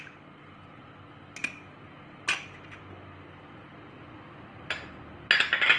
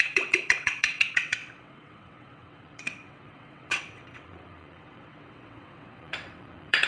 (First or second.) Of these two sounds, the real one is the first